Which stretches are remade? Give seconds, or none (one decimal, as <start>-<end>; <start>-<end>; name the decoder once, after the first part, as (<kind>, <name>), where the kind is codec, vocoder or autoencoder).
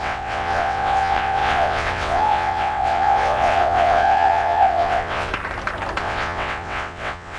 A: 0.0-5.3 (vocoder, WaveNeXt); 6.0-7.4